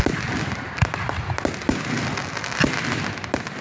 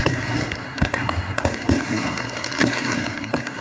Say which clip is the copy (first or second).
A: second